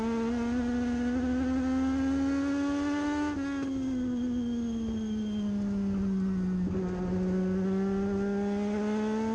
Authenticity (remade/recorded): recorded